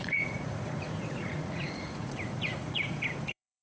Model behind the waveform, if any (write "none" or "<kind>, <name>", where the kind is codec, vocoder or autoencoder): vocoder, Vocos